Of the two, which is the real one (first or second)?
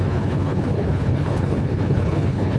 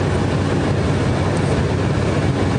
second